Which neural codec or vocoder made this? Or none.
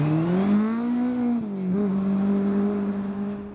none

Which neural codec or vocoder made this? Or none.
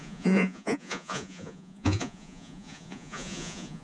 vocoder, Vocos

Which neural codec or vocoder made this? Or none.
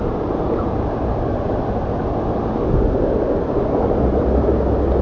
none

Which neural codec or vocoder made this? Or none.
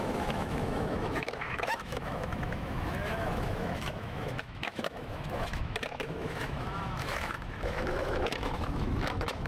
autoencoder, DAC-VAE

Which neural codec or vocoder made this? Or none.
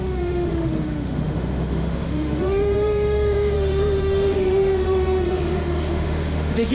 autoencoder, DAC-VAE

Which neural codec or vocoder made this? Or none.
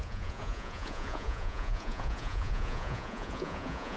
vocoder, Vocos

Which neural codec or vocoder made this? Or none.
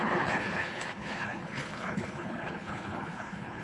codec, HILCodec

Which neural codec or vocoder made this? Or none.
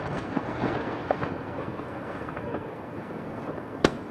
codec, SNAC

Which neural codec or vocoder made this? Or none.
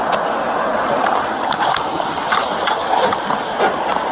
none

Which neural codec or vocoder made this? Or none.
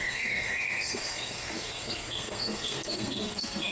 codec, SNAC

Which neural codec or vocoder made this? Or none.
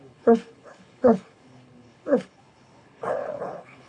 codec, HILCodec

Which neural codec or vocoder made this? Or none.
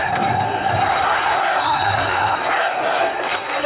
codec, SNAC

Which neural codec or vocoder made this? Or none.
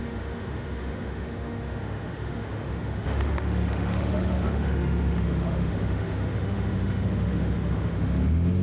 autoencoder, DAC-VAE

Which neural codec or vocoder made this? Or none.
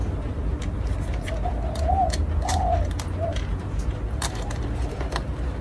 none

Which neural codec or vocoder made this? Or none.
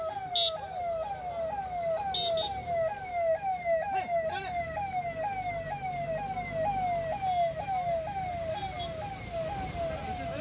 none